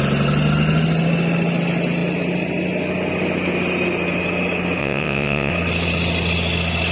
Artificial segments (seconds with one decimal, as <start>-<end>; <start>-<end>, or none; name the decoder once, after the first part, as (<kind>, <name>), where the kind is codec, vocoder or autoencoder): 4.8-5.5 (vocoder, WaveNeXt)